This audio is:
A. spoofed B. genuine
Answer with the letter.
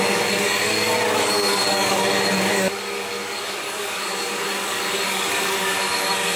A